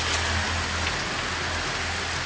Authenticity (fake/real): real